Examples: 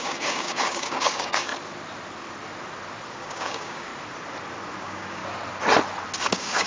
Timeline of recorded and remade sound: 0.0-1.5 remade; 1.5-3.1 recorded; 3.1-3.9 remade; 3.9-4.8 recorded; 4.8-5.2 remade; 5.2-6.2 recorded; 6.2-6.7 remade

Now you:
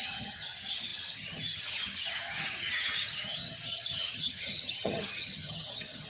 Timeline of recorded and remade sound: 0.0-6.1 remade